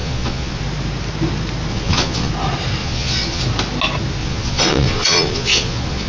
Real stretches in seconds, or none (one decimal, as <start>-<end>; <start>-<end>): 0.6-1.7; 2.3-2.8; 3.4-4.2